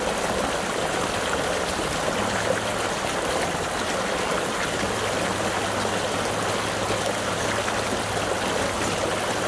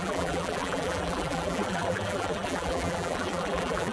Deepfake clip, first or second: second